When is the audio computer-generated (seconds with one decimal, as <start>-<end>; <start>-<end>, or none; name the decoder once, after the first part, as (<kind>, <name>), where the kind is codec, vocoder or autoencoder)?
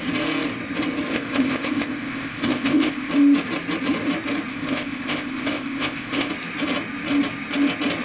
1.1-3.1 (codec, ZipCodec); 4.5-6.3